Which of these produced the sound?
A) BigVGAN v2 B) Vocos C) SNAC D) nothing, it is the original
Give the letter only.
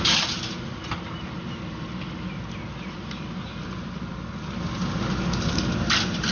A